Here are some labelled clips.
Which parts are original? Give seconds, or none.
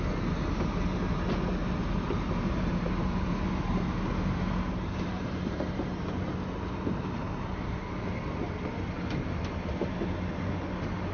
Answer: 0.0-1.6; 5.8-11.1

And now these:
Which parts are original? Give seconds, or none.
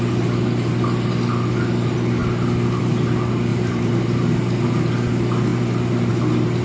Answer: 0.0-3.5; 4.2-6.6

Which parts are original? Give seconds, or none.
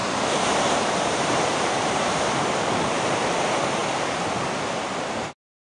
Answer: 3.2-5.8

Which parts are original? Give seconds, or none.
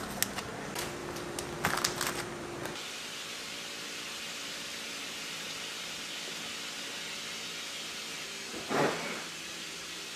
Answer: 0.0-1.0; 5.9-10.2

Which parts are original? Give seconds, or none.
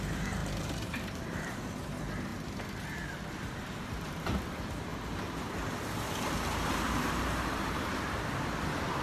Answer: 2.3-3.5; 4.9-5.8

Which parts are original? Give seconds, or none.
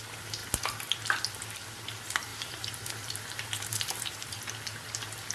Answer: 0.0-2.3; 4.3-5.3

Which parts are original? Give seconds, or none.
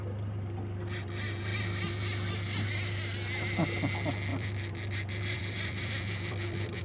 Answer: 0.0-4.3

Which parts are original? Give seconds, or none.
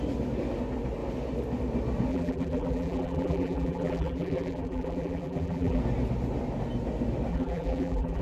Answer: 0.0-2.1; 5.8-7.3